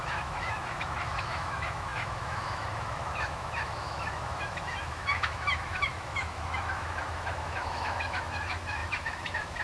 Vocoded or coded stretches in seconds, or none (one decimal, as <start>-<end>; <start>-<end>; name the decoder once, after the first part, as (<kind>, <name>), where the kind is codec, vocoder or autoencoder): 0.0-9.6 (autoencoder, DAC-VAE)